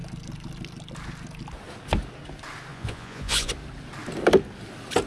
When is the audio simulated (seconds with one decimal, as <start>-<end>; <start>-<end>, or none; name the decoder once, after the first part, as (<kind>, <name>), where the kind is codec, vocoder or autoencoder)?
2.7-3.5 (vocoder, Vocos)